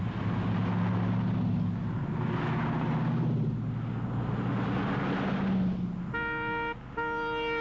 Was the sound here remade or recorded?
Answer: recorded